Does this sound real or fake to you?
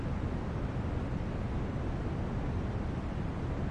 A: real